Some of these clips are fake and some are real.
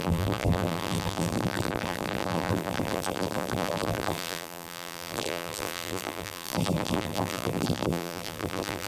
fake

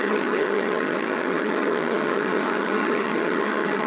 fake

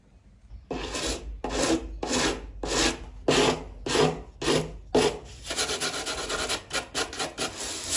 real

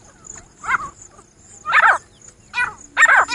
real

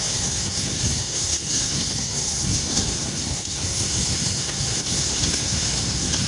fake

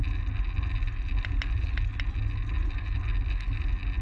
real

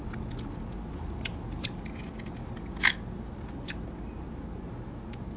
real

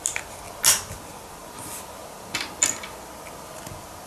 real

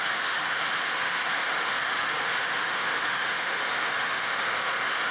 fake